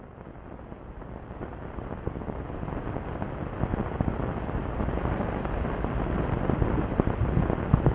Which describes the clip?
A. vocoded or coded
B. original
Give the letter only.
B